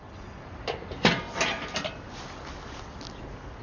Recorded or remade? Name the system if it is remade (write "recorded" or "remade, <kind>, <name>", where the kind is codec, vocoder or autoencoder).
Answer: recorded